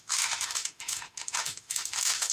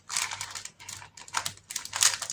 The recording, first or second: second